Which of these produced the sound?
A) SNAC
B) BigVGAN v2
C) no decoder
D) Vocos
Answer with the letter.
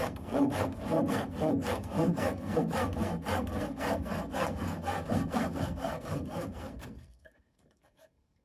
A